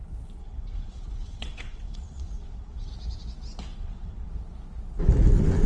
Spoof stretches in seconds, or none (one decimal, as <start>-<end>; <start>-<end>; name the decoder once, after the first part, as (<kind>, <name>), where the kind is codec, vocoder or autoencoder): 0.4-2.9 (vocoder, WaveNeXt); 3.7-4.3